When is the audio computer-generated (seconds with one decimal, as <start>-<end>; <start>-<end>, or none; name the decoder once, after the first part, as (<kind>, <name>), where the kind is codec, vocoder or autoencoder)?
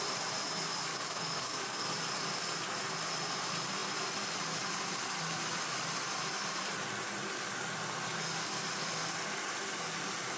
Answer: 0.9-1.9 (codec, DAC)